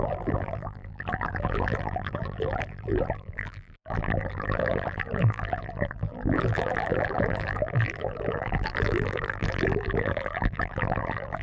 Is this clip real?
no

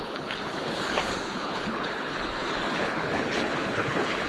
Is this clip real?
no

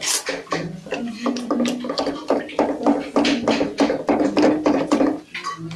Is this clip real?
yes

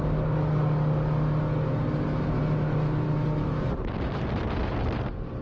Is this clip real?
yes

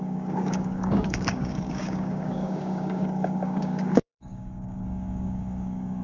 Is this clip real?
no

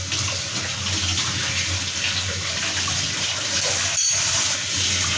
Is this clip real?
yes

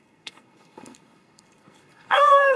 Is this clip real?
no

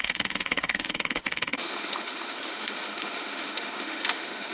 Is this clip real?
no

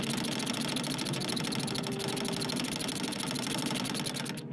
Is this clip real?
yes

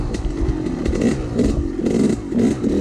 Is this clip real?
yes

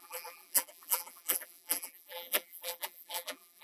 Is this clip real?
no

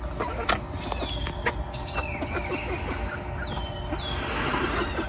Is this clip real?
yes